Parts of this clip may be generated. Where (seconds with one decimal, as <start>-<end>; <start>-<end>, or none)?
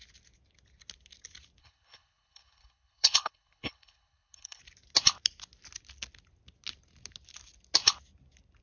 1.6-4.6